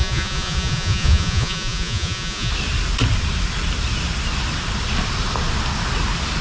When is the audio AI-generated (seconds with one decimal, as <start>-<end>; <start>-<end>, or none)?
0.0-2.5